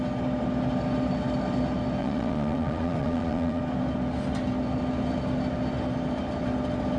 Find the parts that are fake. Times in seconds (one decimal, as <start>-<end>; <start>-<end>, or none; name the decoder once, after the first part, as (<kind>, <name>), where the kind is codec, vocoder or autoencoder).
2.0-3.6 (vocoder, Vocos)